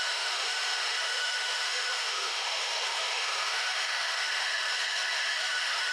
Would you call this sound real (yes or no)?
no